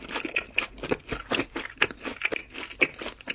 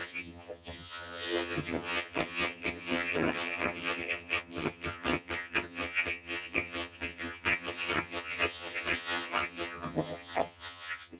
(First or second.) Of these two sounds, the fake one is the second